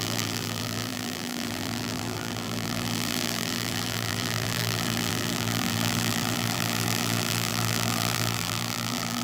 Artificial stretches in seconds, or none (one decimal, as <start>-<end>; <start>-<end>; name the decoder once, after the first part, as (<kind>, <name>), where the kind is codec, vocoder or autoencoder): 0.0-9.2 (vocoder, BigVGAN v2)